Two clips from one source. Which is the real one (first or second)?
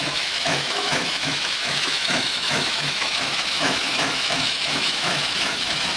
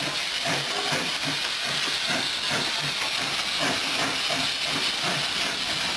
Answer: second